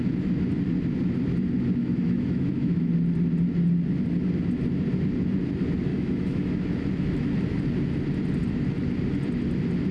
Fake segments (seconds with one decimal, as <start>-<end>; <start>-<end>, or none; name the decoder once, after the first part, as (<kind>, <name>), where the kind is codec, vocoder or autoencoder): 1.8-2.9 (autoencoder, DAC-VAE); 5.9-6.5